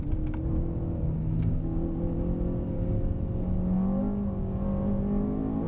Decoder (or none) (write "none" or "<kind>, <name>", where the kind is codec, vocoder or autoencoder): none